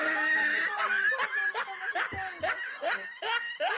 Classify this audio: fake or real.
real